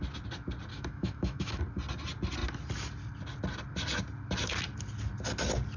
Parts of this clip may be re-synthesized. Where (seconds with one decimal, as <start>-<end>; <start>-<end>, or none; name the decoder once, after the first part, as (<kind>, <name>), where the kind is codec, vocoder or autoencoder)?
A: 0.7-1.6 (autoencoder, DAC-VAE)